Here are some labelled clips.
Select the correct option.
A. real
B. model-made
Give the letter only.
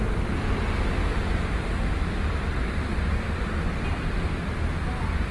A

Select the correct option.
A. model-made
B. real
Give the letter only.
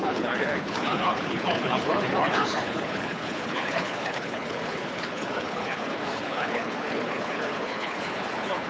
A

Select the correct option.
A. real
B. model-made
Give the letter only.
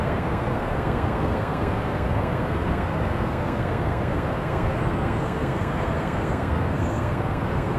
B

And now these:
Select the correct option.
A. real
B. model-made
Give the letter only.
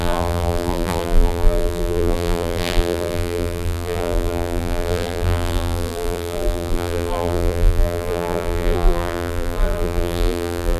B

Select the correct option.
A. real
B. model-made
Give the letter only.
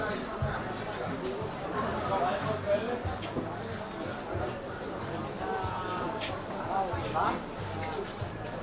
A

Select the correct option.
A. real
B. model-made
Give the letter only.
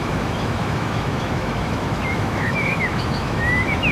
B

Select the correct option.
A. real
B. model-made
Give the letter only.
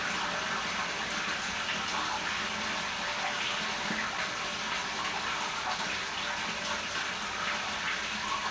A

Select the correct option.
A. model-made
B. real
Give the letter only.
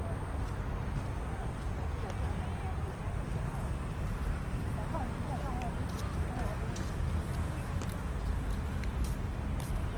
B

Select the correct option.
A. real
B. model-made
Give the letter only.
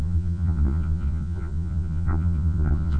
B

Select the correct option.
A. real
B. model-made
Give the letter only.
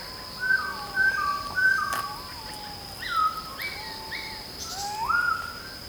A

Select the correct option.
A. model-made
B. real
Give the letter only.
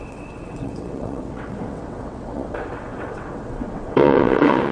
A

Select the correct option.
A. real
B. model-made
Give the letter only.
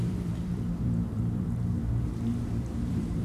B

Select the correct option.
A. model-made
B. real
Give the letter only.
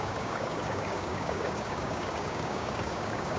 A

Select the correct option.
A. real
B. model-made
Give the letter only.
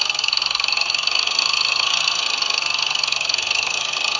B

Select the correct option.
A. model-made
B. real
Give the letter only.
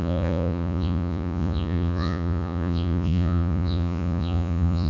A